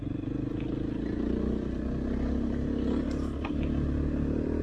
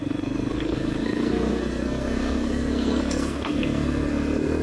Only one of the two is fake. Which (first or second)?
second